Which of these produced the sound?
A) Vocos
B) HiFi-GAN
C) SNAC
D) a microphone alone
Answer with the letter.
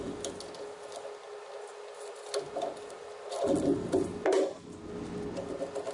D